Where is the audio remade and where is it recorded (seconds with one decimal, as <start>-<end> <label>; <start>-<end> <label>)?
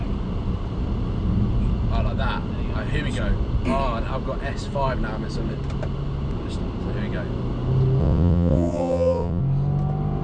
0.0-8.0 recorded; 8.0-9.4 remade; 9.4-10.2 recorded